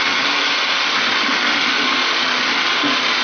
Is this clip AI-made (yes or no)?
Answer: no